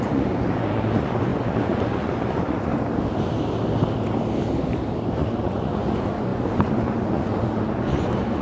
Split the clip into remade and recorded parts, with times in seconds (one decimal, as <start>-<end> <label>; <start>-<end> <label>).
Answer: 0.0-2.7 remade; 2.7-5.2 recorded; 5.2-8.4 remade